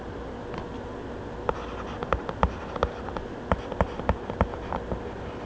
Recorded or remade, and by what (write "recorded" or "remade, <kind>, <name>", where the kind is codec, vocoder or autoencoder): recorded